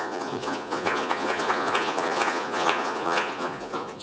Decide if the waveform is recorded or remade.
remade